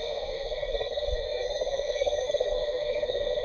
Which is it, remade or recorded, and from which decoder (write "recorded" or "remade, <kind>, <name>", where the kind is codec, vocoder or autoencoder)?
remade, codec, SNAC